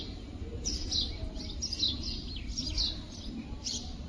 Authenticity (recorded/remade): recorded